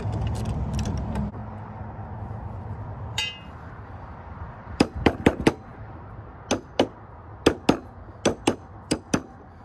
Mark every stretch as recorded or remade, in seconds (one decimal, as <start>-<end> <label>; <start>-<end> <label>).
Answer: 0.0-1.4 remade; 1.4-2.7 recorded; 2.7-5.7 remade; 5.7-8.8 recorded; 8.8-9.6 remade